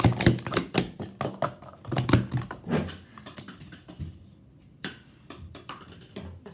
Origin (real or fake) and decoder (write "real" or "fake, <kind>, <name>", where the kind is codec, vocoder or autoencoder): real